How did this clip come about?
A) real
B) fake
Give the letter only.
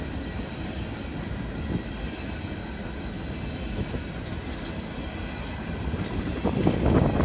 A